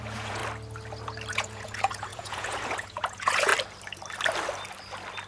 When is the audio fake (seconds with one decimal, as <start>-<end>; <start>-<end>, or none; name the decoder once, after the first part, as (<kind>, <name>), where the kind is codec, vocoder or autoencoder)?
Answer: 0.0-0.4 (vocoder, Vocos); 1.3-3.5